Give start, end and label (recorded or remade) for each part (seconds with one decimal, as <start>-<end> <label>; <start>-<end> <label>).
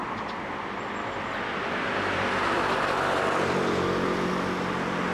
0.0-0.5 remade; 0.5-1.5 recorded; 1.5-4.3 remade; 4.3-5.1 recorded